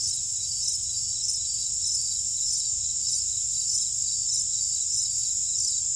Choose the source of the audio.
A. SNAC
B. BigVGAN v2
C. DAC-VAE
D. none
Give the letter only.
D